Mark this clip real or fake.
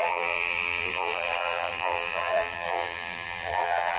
fake